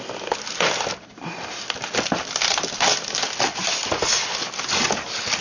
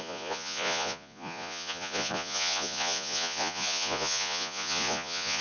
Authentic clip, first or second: first